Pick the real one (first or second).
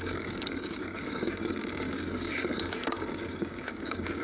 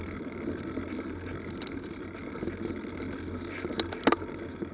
second